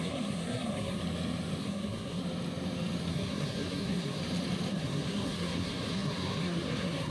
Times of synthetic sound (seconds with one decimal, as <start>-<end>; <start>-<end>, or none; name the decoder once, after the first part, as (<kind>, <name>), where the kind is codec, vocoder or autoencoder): 0.0-1.0 (codec, SNAC); 1.6-2.2; 3.1-4.2; 4.7-7.1